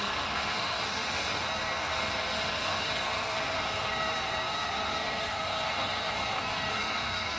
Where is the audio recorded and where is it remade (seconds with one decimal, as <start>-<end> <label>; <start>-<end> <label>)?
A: 0.0-7.4 remade